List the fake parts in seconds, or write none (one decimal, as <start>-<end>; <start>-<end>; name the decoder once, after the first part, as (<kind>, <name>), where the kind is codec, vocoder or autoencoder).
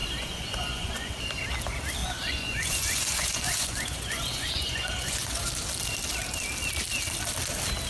0.0-1.2 (vocoder, Vocos); 2.0-5.5